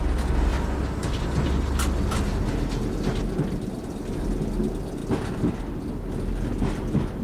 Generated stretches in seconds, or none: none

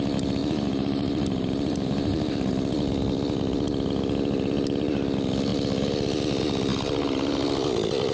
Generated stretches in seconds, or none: 0.4-2.5

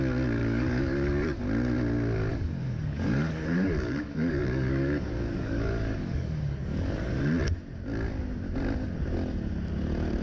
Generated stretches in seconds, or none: 0.4-1.4; 2.3-7.1

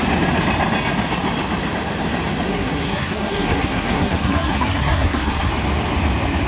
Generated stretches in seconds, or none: 2.5-5.5

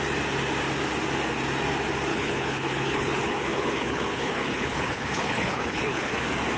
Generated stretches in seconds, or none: 2.1-6.1

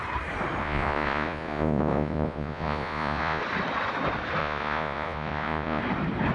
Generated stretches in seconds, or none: 0.6-3.4; 4.4-5.8

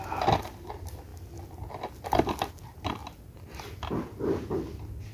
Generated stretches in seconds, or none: none

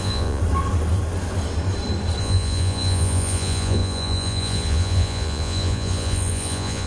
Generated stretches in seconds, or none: 0.0-0.4; 2.2-6.9